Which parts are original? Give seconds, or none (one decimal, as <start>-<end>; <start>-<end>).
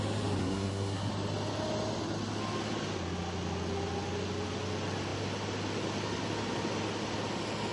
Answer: 0.0-0.4; 1.1-7.7